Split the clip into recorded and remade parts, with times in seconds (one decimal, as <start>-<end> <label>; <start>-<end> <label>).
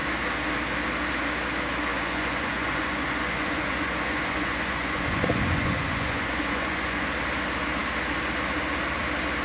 0.0-1.9 recorded; 1.9-7.1 remade; 7.1-9.4 recorded